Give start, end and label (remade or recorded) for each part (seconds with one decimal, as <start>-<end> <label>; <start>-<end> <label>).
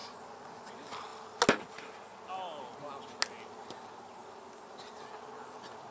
0.0-0.7 remade; 0.7-5.9 recorded